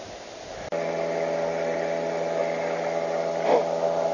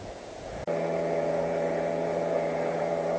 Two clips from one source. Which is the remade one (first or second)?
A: second